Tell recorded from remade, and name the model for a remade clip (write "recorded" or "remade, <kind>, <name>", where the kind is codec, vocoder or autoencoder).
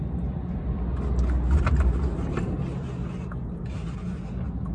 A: recorded